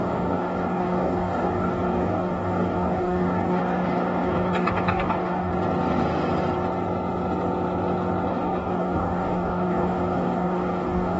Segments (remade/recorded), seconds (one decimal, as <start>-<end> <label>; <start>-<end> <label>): 0.0-5.5 remade; 5.5-8.3 recorded; 8.3-11.2 remade